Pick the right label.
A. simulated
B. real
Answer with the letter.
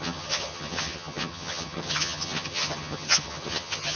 A